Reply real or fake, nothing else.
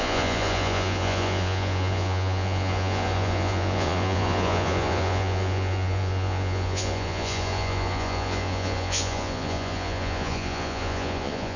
fake